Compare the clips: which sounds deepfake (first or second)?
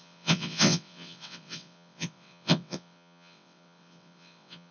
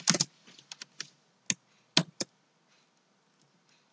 first